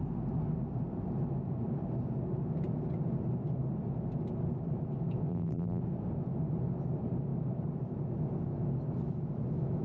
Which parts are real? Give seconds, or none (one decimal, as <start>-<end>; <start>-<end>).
0.0-5.3; 5.8-9.8